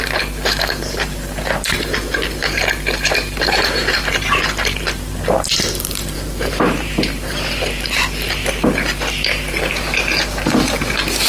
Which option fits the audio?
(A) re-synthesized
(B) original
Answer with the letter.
A